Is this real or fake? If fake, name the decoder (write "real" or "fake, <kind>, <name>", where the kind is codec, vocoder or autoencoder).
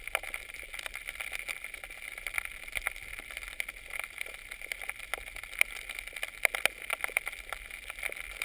real